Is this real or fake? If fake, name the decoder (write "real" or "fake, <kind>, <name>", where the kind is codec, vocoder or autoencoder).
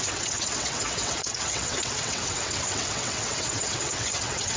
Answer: fake, vocoder, WaveNeXt